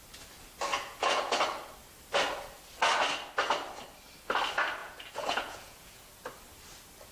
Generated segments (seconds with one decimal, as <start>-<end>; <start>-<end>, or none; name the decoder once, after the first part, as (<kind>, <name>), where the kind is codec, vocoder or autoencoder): 0.7-1.3 (vocoder, Vocos); 4.8-6.1